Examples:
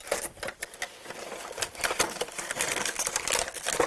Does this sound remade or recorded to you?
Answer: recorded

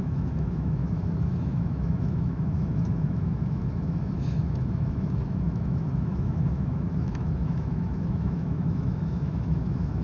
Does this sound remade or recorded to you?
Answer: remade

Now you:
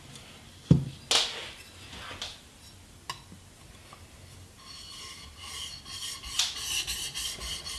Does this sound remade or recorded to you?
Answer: recorded